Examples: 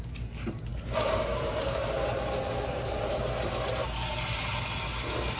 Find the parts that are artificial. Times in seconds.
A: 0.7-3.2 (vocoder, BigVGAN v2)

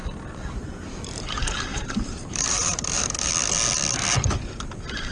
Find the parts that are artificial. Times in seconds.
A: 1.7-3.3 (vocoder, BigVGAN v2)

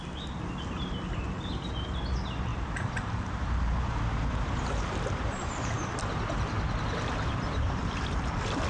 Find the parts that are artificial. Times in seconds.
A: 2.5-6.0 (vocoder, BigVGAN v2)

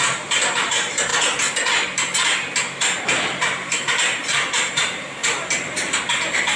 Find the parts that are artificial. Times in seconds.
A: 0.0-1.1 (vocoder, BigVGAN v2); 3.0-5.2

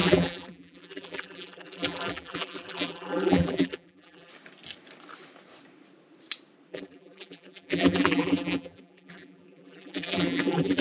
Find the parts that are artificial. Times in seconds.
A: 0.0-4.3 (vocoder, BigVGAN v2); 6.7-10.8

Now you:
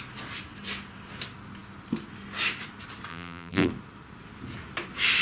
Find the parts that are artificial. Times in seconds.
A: 3.1-3.7 (vocoder, BigVGAN v2)

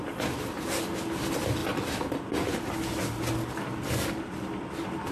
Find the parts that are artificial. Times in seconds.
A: none

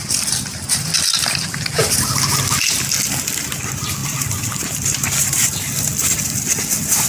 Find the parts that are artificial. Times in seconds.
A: 1.8-2.6 (vocoder, BigVGAN v2)